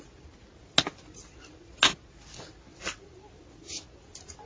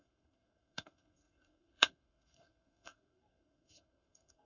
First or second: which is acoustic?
first